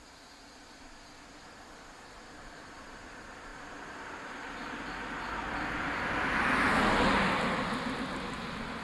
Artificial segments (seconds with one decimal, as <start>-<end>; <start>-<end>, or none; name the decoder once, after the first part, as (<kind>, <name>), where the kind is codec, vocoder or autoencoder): none